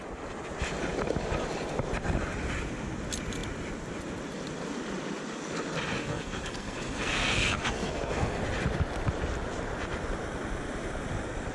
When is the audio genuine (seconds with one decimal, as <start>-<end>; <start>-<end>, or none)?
0.0-6.0; 8.4-11.5